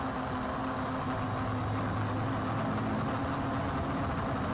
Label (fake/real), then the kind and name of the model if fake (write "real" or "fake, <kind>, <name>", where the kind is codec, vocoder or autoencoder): real